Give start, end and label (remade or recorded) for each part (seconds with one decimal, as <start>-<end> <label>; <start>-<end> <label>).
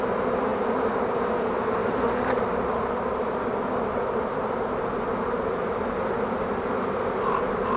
0.0-7.8 recorded